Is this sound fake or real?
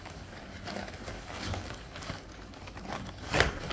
fake